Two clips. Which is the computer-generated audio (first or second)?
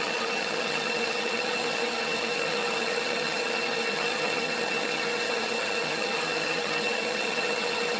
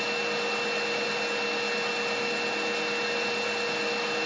first